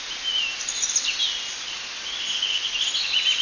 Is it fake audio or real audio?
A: real